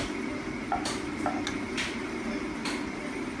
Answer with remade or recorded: recorded